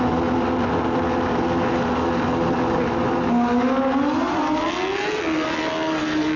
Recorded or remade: recorded